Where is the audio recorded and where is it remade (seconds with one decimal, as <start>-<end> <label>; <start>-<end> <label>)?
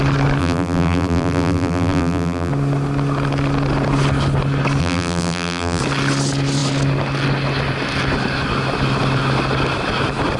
0.0-0.4 recorded; 0.4-2.5 remade; 2.5-4.8 recorded; 4.8-5.8 remade; 5.8-10.4 recorded